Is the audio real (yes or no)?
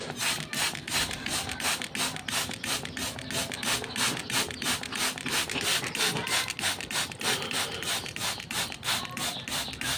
yes